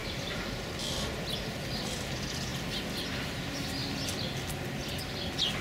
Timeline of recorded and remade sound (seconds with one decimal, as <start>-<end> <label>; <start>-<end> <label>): 0.0-0.7 remade; 0.7-5.6 recorded